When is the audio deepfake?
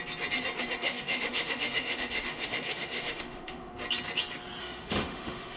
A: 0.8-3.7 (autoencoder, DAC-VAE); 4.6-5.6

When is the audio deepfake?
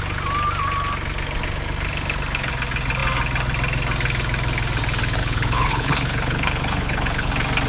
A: 5.2-7.3 (codec, HILCodec)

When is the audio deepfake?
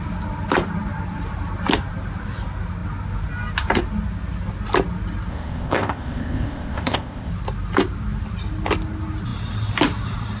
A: 5.3-7.3 (codec, ZipCodec)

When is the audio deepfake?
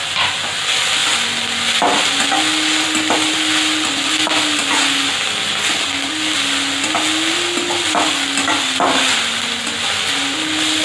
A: none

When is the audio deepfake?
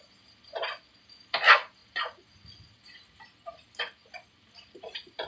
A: none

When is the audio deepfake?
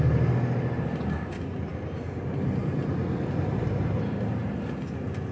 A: none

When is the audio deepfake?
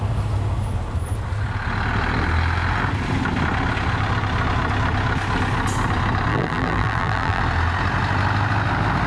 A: 6.3-7.4 (vocoder, BigVGAN v2)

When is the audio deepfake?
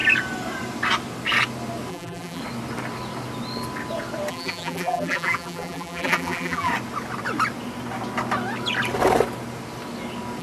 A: 1.9-2.4 (vocoder, BigVGAN v2); 4.3-6.7